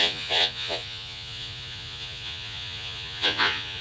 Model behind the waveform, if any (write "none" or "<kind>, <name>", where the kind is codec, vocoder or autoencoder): vocoder, Vocos